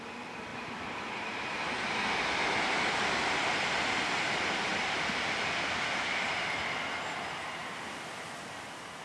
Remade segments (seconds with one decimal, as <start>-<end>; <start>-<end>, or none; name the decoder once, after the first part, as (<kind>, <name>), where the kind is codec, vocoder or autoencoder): 0.5-1.6 (vocoder, BigVGAN v2)